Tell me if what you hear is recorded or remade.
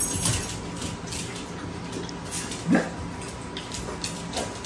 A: recorded